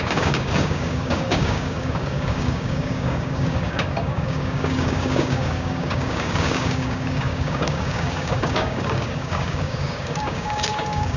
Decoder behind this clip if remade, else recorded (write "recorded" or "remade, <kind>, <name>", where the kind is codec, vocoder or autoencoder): remade, codec, DAC